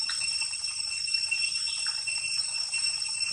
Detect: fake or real real